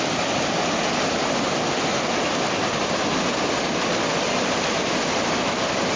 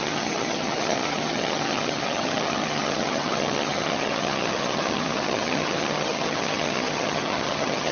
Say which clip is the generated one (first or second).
second